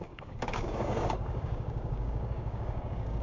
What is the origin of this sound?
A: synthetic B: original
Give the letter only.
A